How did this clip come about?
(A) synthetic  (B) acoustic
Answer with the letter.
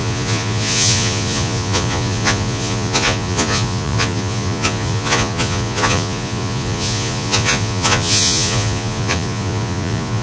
A